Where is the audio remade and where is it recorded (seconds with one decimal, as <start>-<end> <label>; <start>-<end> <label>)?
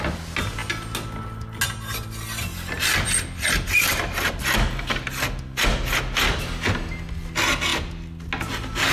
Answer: 0.0-8.9 recorded